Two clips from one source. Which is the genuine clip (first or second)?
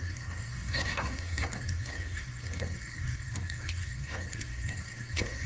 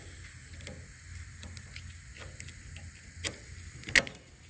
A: second